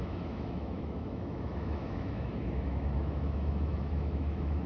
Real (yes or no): no